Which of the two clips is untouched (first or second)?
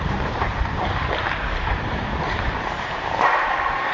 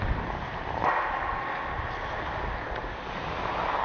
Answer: second